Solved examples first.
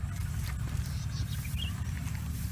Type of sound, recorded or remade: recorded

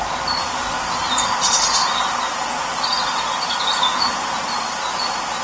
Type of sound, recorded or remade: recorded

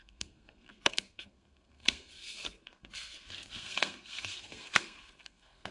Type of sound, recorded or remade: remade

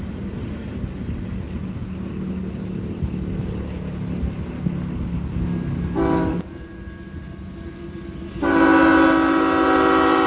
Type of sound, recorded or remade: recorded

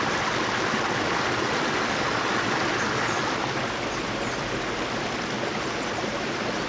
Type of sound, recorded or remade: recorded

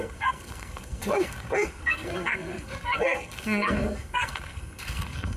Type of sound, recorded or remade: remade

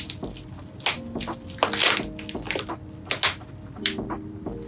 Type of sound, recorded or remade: recorded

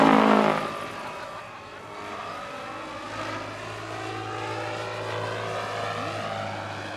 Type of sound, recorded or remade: recorded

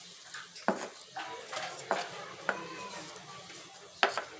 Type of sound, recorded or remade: recorded